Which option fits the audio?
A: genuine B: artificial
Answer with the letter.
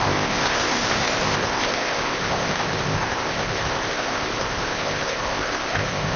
B